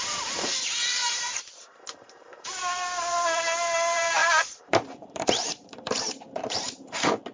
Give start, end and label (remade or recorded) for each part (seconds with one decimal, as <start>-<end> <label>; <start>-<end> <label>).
0.0-0.5 remade; 0.5-1.1 recorded; 1.1-7.3 remade